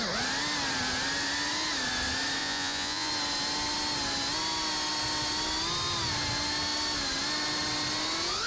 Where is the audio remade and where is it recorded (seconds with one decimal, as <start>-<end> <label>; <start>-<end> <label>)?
0.0-2.4 recorded; 2.4-3.1 remade; 3.1-8.5 recorded